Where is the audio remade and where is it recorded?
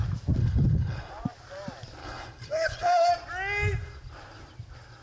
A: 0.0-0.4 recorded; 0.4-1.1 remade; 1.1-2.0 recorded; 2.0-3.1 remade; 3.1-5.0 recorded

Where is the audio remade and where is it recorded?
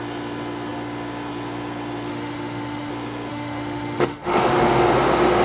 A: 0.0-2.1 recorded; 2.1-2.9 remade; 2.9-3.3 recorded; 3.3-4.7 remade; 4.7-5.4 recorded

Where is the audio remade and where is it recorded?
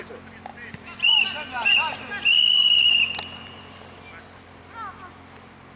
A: 0.0-0.5 recorded; 0.5-3.8 remade; 3.8-5.8 recorded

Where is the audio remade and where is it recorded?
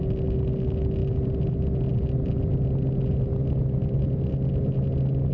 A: 0.0-5.3 recorded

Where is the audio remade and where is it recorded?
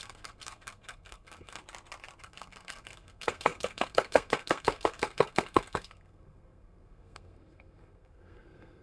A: 0.0-1.6 remade; 1.6-2.2 recorded; 2.2-8.8 remade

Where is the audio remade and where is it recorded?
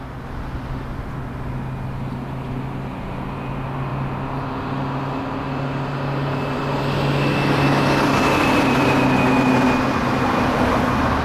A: 0.0-11.2 recorded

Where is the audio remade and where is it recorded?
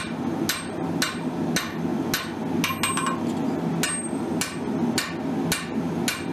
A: 0.0-6.3 recorded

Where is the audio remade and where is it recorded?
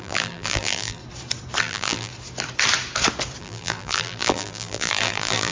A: 0.0-1.0 remade; 1.0-1.6 recorded; 1.6-2.1 remade; 2.1-3.4 recorded; 3.4-5.5 remade